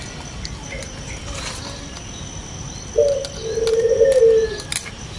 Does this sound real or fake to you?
real